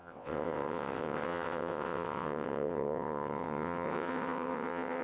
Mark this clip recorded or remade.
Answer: remade